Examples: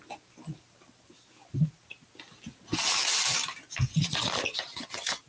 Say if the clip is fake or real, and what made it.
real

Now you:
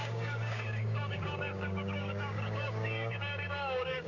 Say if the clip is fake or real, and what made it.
fake, codec, DAC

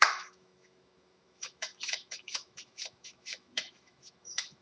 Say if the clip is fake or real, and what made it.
fake, autoencoder, DAC-VAE